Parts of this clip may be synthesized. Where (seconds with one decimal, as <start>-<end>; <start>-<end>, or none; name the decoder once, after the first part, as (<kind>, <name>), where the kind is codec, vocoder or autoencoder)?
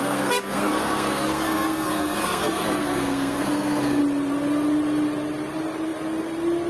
0.0-4.0 (codec, SNAC)